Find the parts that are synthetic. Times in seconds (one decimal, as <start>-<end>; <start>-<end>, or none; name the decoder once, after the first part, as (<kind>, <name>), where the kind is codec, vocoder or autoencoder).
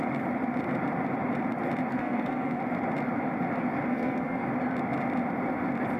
1.9-2.6 (codec, SNAC); 3.9-4.5